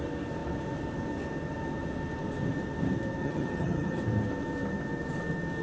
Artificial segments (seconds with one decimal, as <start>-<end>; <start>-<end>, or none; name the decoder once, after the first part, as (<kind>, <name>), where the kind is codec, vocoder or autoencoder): 3.2-4.0 (vocoder, HiFi-GAN)